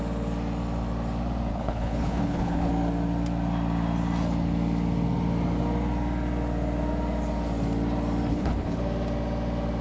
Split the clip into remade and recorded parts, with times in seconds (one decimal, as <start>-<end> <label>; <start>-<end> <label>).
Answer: 0.0-1.5 recorded; 1.5-2.7 remade; 2.7-8.3 recorded; 8.3-8.8 remade; 8.8-9.8 recorded